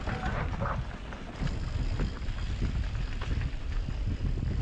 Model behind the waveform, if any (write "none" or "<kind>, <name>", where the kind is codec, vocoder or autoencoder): none